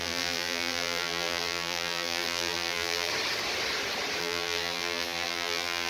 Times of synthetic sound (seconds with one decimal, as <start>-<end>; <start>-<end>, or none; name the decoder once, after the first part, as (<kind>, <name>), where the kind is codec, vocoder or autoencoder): 0.0-3.1 (vocoder, BigVGAN v2); 4.2-5.9

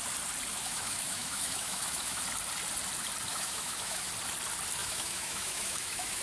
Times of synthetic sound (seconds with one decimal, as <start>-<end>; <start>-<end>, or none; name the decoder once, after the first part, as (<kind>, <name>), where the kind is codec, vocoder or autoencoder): 0.5-2.2 (autoencoder, DAC-VAE); 3.3-4.1; 4.8-6.2

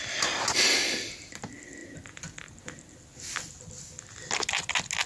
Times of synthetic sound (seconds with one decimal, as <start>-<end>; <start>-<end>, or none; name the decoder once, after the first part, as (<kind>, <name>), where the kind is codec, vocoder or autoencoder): none

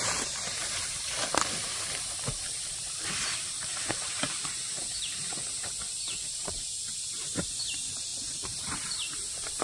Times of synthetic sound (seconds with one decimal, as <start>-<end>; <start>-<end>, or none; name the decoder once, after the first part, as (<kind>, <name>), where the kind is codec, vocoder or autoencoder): 0.0-9.6 (vocoder, BigVGAN v2)